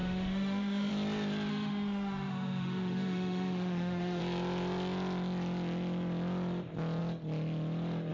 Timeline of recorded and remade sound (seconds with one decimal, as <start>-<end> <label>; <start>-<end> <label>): 0.0-0.9 remade; 0.9-1.5 recorded; 1.5-4.2 remade; 4.2-8.1 recorded